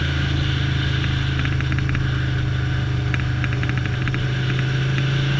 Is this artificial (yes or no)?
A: no